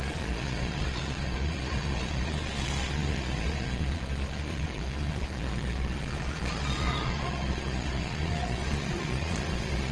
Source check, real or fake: fake